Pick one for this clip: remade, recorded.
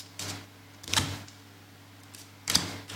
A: remade